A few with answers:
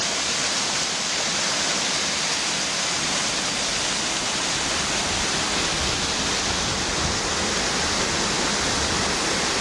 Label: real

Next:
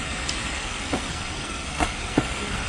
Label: fake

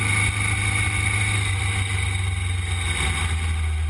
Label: real